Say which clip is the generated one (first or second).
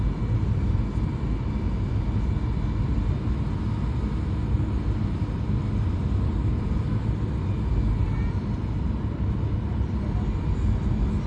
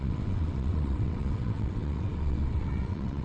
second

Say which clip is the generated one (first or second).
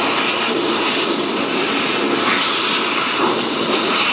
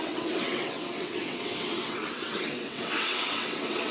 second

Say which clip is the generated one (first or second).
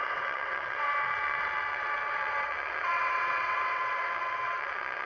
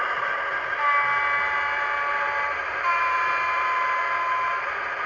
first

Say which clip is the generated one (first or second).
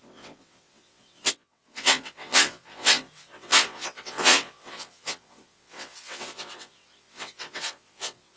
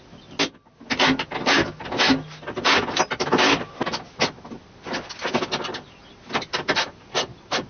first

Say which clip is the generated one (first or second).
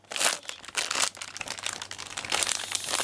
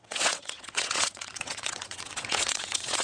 second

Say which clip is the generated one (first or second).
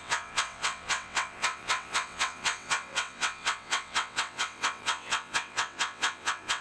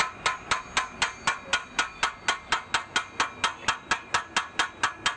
first